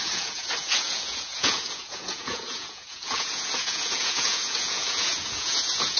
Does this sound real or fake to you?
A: fake